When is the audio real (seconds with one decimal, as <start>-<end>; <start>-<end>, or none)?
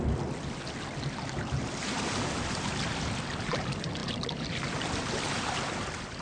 0.0-6.2